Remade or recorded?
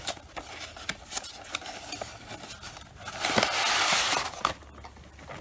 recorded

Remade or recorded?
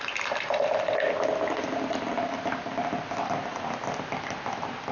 recorded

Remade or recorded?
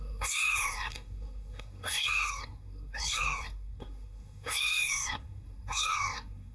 remade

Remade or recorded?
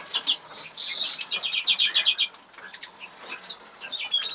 recorded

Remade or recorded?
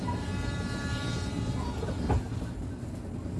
recorded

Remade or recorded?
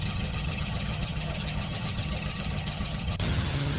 remade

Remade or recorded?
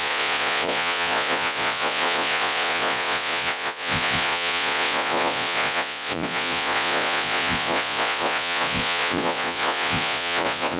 remade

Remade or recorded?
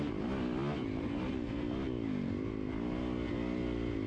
recorded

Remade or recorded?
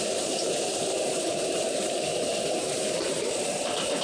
remade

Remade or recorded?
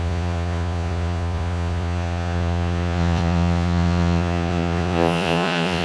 remade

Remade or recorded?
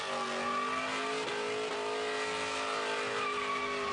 recorded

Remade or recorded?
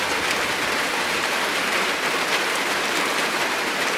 remade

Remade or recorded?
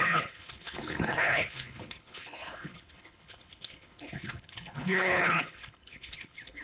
remade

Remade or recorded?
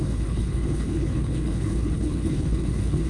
remade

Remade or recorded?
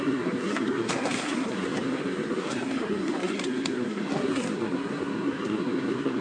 remade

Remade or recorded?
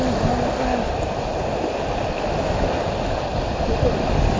recorded